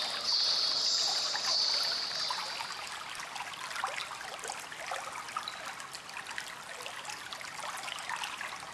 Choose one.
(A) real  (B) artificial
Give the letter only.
A